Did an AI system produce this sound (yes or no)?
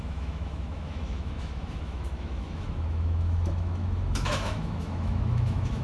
yes